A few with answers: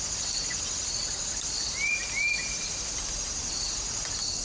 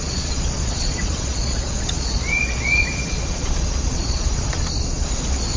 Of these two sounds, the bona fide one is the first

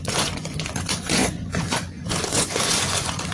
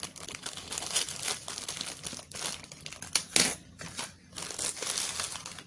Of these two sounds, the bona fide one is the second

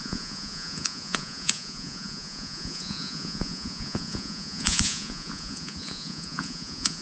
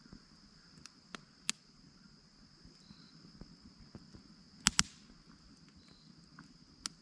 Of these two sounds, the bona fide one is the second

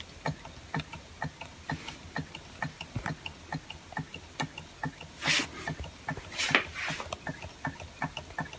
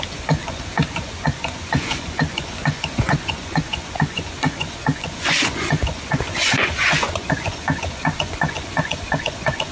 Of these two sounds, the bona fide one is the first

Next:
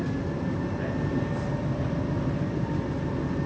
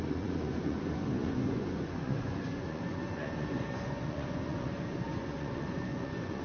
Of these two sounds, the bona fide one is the first